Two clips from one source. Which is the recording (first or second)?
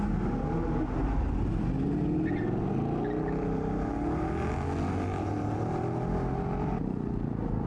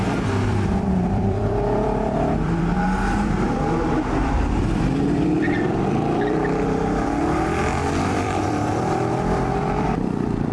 first